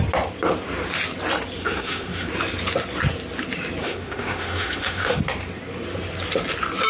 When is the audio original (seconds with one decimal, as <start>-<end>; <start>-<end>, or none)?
0.0-1.6; 2.3-3.8; 5.2-6.9